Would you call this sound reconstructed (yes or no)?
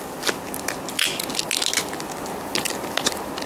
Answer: no